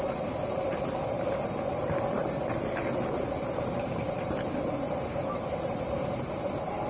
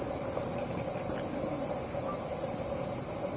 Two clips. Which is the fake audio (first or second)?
first